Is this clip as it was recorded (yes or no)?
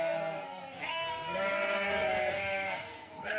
no